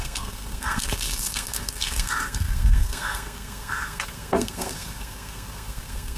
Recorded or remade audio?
remade